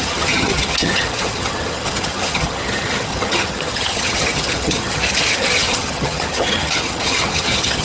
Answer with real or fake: fake